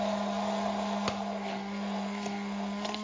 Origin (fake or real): real